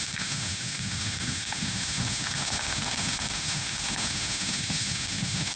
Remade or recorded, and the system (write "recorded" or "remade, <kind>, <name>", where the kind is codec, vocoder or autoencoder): remade, autoencoder, DAC-VAE